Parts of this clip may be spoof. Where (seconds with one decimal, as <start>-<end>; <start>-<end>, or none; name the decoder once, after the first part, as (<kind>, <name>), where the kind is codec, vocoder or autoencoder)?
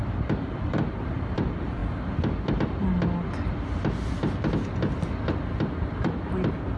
0.0-1.8 (vocoder, BigVGAN v2); 5.9-6.8